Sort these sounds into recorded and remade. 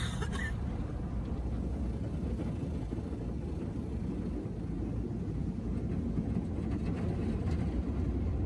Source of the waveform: recorded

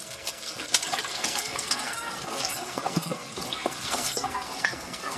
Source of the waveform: remade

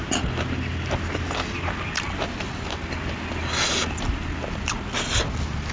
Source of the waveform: recorded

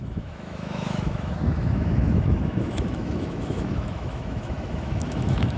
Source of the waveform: remade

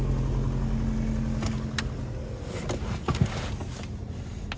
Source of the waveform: recorded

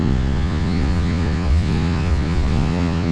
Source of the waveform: remade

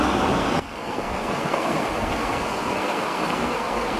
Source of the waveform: remade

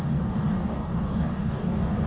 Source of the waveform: remade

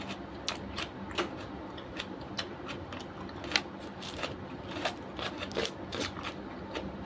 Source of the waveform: recorded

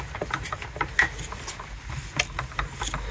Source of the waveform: recorded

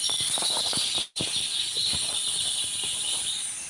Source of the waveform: remade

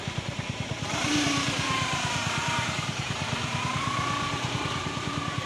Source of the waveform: remade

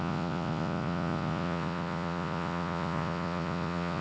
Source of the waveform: remade